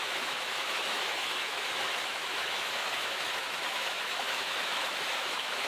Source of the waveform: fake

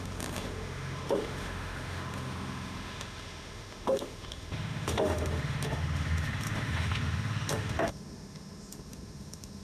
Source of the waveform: fake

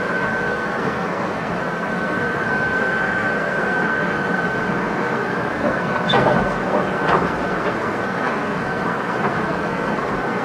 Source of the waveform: fake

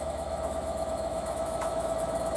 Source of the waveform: fake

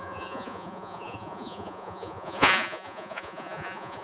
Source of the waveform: fake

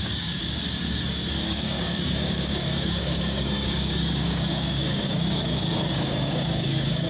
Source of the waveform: fake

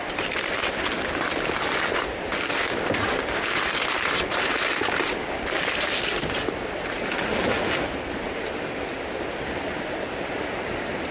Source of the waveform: real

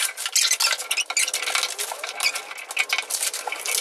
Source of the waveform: real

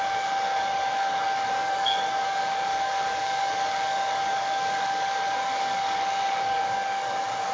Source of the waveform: fake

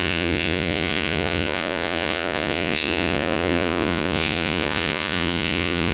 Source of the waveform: fake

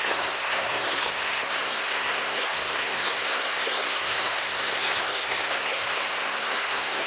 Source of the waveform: fake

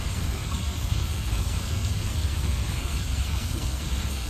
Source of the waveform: fake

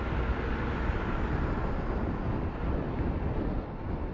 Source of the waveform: real